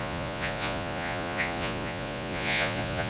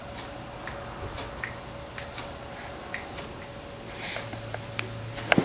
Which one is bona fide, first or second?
second